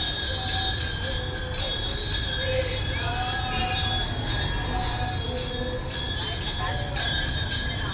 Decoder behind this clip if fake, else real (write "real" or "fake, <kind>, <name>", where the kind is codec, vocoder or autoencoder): real